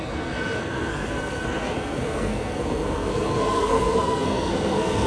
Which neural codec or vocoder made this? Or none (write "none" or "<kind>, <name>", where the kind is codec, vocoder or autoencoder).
codec, SNAC